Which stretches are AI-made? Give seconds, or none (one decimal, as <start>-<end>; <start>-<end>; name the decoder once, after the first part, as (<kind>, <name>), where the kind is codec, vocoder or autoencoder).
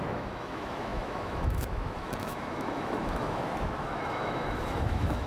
0.0-5.3 (autoencoder, DAC-VAE)